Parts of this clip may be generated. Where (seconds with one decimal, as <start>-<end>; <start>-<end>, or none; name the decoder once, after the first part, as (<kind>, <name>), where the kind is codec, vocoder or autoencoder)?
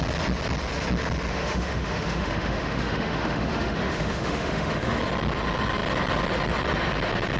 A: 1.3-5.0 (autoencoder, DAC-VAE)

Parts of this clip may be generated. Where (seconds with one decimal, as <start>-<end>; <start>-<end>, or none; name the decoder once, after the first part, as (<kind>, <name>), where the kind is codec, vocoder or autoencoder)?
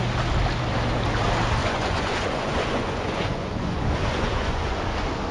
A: 1.6-4.8 (vocoder, Vocos)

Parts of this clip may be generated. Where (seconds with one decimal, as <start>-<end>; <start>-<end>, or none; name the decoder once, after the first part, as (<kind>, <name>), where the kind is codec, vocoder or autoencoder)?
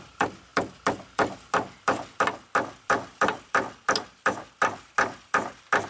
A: none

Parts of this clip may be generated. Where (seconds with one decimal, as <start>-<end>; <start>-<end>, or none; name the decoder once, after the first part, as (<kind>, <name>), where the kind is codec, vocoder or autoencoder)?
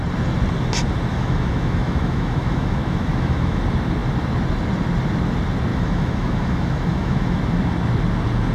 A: 1.1-3.6 (autoencoder, DAC-VAE); 5.7-7.4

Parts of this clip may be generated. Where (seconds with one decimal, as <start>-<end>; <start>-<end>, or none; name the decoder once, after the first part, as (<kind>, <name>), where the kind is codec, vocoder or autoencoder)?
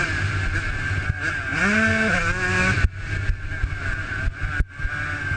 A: none